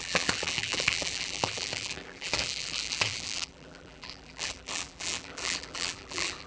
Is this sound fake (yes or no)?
yes